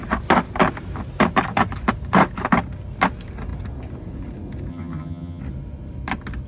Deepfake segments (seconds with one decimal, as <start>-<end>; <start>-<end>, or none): 4.7-5.4